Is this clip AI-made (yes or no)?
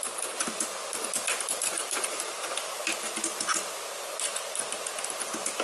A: no